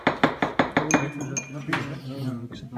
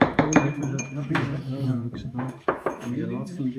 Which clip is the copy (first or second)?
second